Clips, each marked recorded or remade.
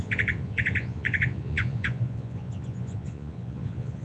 remade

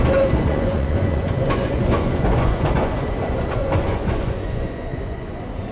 remade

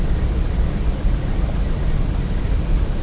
recorded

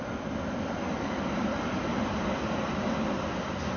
recorded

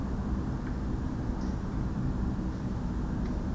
recorded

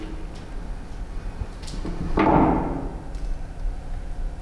recorded